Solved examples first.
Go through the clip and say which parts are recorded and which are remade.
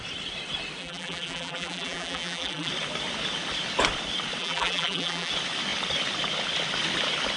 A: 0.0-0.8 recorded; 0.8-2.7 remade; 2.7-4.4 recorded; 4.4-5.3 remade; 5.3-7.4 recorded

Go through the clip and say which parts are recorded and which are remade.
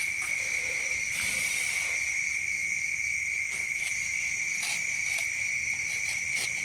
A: 0.0-2.6 remade; 2.6-3.9 recorded; 3.9-6.6 remade